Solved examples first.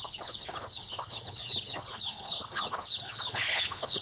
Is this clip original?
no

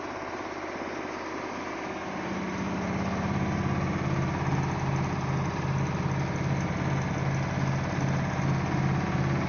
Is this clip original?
yes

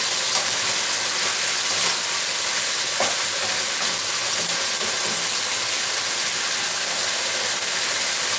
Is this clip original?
yes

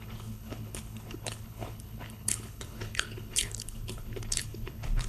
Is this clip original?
no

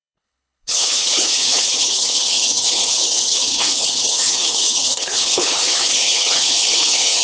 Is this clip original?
no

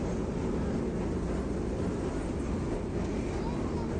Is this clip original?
yes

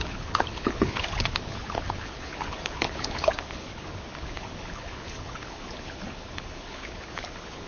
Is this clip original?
no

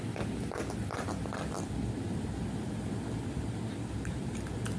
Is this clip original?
yes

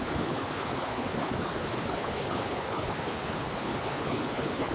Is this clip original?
no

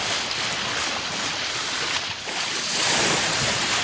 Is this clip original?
yes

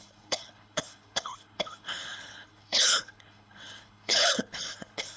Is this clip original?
no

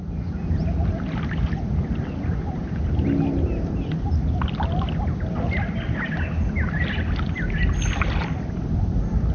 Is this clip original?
yes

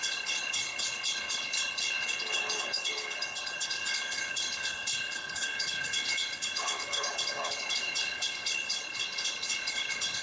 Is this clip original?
no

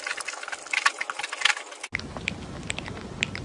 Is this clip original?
yes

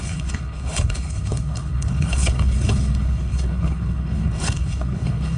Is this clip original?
no